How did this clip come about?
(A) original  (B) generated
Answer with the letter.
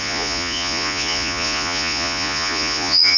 B